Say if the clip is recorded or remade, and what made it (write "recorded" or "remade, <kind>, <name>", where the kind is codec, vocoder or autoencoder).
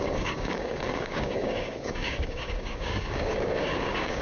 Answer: remade, codec, DAC